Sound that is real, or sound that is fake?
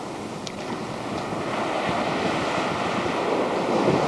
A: real